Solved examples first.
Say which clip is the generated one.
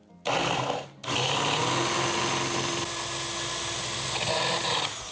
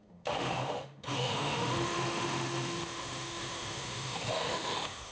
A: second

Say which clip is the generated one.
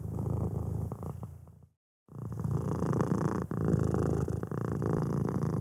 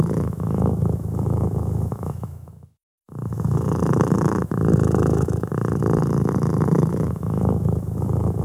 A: second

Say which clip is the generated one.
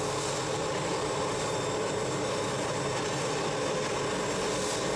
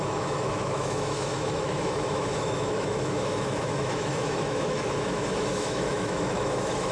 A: second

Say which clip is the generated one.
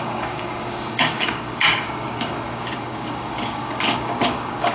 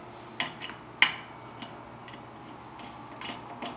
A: first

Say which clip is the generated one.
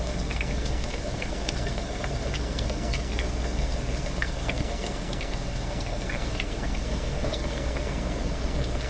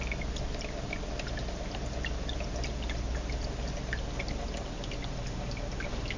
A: first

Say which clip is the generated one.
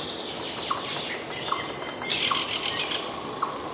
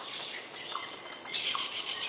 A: second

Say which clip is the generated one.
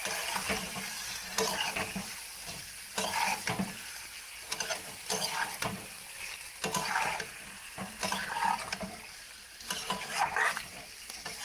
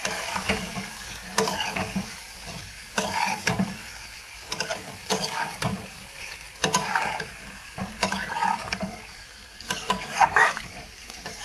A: second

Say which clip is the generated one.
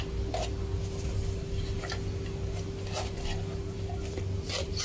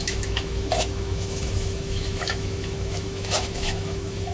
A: second